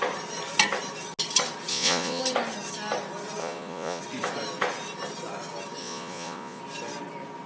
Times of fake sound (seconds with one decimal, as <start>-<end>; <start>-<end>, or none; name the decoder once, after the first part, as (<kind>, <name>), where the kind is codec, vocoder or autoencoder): 1.7-2.2 (vocoder, Vocos); 3.4-4.0; 5.8-6.6